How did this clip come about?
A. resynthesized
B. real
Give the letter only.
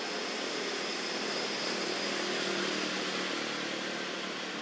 B